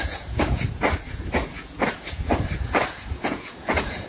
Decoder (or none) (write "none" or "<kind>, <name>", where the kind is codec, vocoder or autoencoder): vocoder, Vocos